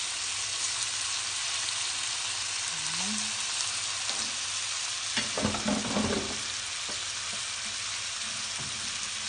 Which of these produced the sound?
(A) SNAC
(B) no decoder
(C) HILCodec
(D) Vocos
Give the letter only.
B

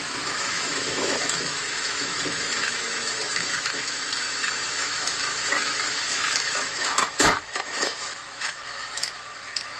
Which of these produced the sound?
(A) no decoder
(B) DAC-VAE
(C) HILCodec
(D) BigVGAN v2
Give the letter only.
B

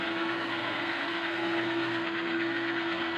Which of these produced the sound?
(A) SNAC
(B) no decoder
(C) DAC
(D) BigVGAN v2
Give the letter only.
A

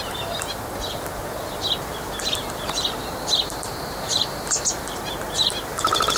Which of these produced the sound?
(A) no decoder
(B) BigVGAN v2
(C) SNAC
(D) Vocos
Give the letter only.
B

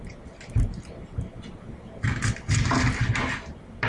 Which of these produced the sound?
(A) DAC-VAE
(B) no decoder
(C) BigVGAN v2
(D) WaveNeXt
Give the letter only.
B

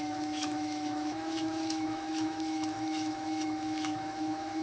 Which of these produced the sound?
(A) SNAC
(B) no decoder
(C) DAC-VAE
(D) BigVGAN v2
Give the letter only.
C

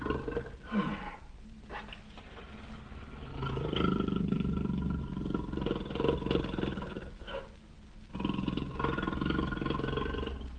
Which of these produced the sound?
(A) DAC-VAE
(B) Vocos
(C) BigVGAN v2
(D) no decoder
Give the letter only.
D